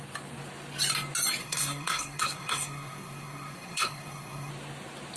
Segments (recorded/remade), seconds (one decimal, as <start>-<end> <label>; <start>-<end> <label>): 0.0-1.4 recorded; 1.4-4.5 remade; 4.5-5.2 recorded